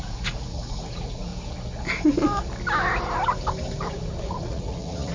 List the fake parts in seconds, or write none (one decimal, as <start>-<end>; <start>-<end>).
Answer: 0.0-1.3; 4.2-5.1